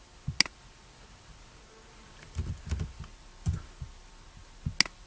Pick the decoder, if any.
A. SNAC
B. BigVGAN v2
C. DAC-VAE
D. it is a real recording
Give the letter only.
D